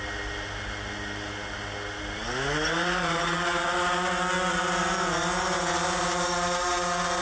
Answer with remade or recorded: recorded